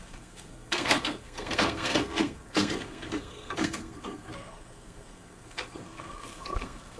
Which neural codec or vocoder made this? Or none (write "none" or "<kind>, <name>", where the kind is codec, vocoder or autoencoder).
codec, SNAC